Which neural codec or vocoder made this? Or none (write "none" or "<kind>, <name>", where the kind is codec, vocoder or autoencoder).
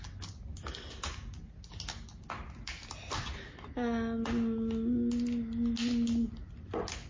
none